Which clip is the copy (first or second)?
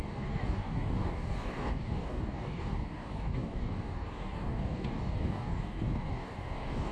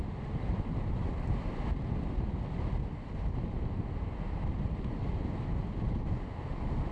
first